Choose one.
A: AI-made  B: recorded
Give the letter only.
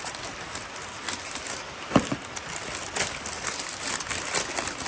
B